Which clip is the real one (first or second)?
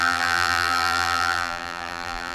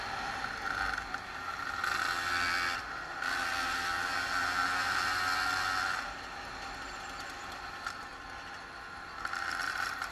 second